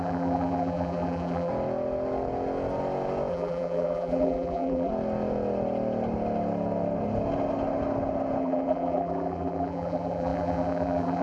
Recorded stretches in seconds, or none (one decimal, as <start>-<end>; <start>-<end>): 1.5-3.3; 4.9-8.4